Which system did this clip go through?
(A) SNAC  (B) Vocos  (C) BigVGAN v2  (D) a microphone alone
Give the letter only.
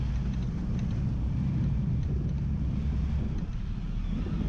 D